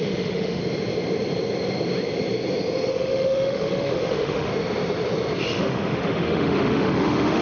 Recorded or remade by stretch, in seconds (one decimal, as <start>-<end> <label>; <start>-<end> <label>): 0.0-0.6 remade; 0.6-2.9 recorded; 2.9-4.5 remade; 4.5-5.4 recorded; 5.4-7.4 remade

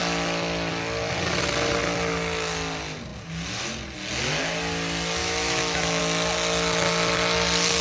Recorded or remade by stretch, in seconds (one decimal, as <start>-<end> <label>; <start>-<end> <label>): 0.0-5.2 recorded; 5.2-6.0 remade; 6.0-7.8 recorded